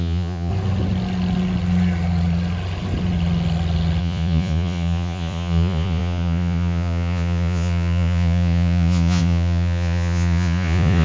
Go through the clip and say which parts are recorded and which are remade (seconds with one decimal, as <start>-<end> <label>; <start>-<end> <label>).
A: 0.0-0.5 remade; 0.5-4.0 recorded; 4.0-11.0 remade